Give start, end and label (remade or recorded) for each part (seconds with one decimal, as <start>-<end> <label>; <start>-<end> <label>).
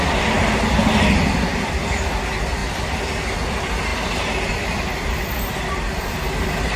0.0-6.8 recorded